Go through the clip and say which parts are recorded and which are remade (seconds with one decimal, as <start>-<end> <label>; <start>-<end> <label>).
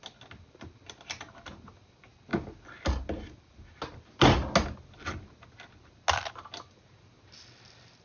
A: 0.0-8.0 recorded